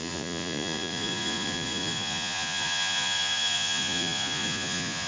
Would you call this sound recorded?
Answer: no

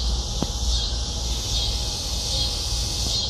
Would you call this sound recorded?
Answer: yes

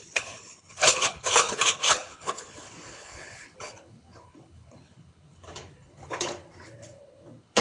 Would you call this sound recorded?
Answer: no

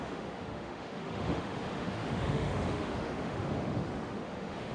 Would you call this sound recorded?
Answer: no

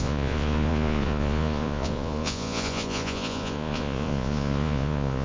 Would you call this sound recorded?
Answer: no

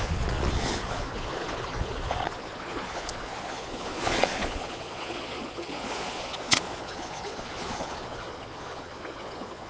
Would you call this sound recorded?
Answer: no